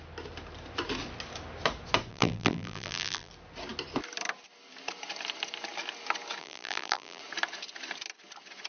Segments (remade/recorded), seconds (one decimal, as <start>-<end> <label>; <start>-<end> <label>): 0.0-2.1 recorded; 2.1-3.3 remade; 3.3-6.4 recorded; 6.4-7.2 remade; 7.2-8.7 recorded